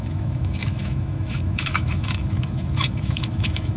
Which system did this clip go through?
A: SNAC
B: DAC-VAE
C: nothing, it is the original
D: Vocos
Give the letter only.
B